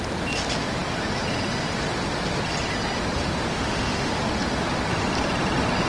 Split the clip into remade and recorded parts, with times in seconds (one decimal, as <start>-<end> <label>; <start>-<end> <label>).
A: 0.0-3.5 recorded; 3.5-4.1 remade; 4.1-5.9 recorded